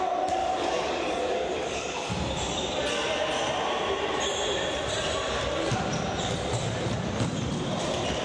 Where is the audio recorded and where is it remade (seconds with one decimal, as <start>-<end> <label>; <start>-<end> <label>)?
0.0-0.4 recorded; 0.4-1.9 remade; 1.9-8.2 recorded